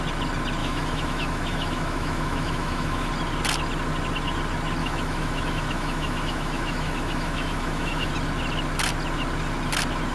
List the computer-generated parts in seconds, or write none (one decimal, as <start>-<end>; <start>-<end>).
0.6-3.1; 4.8-8.1